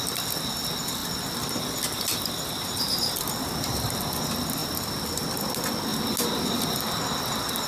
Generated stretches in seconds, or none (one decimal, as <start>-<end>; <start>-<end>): none